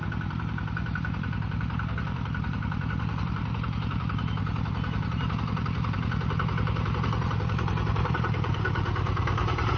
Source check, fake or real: fake